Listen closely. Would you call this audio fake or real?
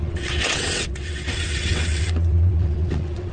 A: fake